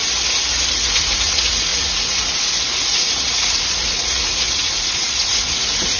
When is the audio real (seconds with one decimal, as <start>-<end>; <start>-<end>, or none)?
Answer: 0.0-0.7